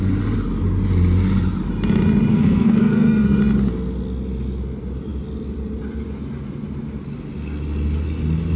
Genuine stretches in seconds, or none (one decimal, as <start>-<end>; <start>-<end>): 0.0-2.3; 3.4-8.6